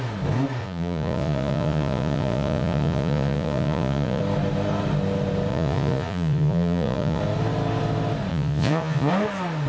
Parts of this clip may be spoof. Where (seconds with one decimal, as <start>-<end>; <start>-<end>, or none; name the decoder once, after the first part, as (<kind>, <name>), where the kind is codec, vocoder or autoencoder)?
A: 0.6-4.2 (vocoder, Vocos); 5.5-7.2; 8.3-9.1